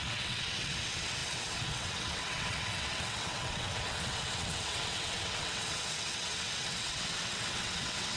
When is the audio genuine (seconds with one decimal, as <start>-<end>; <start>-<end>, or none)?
none